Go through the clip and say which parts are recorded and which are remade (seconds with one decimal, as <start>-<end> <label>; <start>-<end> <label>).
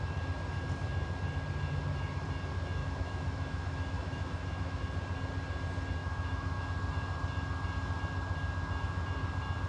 0.0-2.8 recorded; 2.8-4.8 remade; 4.8-6.0 recorded; 6.0-6.6 remade; 6.6-9.7 recorded